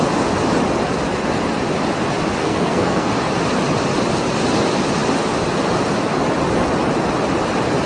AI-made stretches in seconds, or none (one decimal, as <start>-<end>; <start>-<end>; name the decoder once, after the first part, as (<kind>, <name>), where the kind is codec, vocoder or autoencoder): 2.4-3.1 (codec, SNAC)